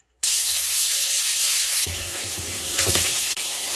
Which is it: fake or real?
fake